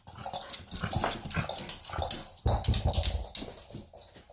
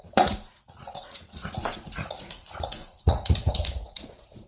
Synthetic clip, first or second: second